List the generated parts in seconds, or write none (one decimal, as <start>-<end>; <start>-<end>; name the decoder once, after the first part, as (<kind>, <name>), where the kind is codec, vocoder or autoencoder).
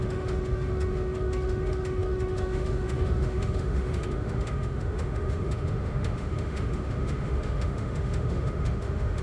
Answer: 0.0-9.2 (autoencoder, DAC-VAE)